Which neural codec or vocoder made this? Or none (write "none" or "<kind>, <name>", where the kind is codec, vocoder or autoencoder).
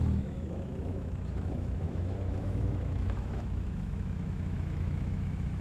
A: autoencoder, DAC-VAE